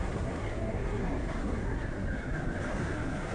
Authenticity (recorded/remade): remade